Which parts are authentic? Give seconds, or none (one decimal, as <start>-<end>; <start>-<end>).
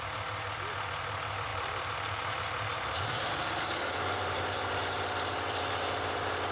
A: 0.0-1.5; 4.6-6.5